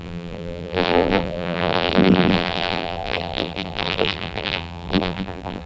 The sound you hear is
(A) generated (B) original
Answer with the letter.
A